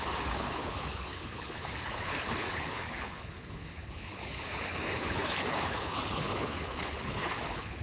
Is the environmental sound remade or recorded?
remade